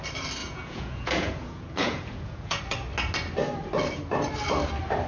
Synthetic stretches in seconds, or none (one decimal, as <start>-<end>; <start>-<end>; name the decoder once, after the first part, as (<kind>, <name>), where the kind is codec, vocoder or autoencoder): 0.4-2.6 (vocoder, Vocos)